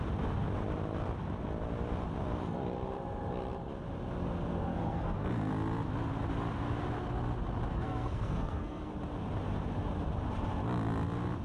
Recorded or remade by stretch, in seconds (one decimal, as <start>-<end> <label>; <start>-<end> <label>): 0.0-4.7 recorded; 4.7-5.5 remade; 5.5-7.7 recorded; 7.7-8.9 remade; 8.9-11.4 recorded